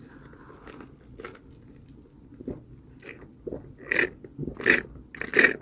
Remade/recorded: recorded